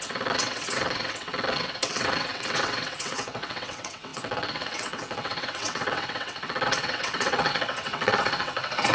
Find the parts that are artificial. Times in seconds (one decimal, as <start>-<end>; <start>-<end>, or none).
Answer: 0.0-8.9

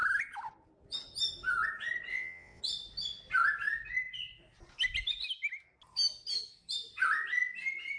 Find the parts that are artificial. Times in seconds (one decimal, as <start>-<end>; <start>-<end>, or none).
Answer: 2.1-2.6

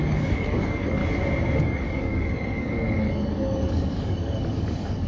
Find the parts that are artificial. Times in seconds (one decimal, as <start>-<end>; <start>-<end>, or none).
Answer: 0.0-1.0; 1.6-5.1

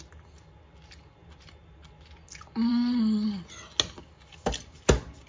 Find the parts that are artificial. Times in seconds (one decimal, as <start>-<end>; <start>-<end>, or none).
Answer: none